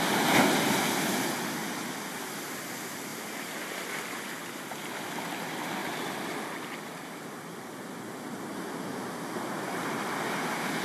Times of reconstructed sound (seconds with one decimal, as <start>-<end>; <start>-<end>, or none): none